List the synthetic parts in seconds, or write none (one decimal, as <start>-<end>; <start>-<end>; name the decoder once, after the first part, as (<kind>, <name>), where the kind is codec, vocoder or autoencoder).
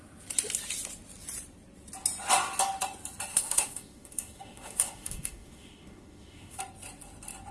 3.3-6.6 (autoencoder, DAC-VAE)